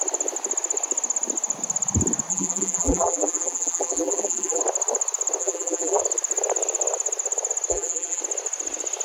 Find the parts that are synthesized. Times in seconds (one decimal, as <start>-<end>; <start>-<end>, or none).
2.3-4.6; 5.4-6.0; 7.7-8.2